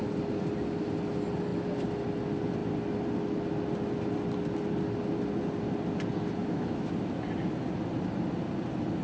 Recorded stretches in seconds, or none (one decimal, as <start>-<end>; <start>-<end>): 0.0-6.4; 6.9-9.0

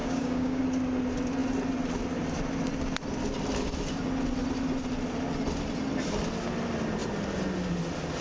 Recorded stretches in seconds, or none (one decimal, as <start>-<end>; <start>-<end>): 0.6-8.2

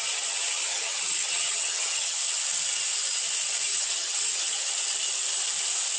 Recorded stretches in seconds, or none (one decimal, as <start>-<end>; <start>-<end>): 0.0-0.7; 2.2-3.7; 4.7-6.0

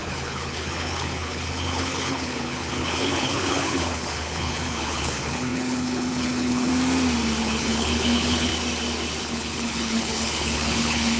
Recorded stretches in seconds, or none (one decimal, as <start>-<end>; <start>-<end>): 6.7-7.4; 8.5-9.2